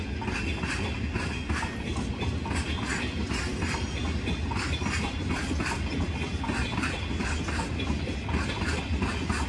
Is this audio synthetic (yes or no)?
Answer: no